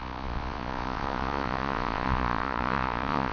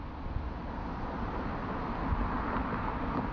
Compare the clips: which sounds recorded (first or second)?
second